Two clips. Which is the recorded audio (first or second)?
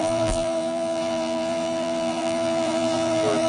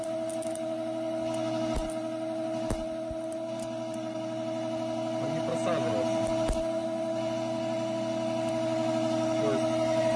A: second